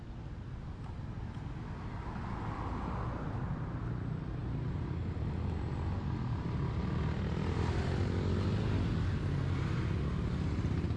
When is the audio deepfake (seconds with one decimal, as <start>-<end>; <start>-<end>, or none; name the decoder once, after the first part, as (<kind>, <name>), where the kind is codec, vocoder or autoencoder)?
none